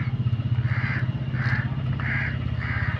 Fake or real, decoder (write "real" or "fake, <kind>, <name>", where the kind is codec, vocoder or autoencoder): real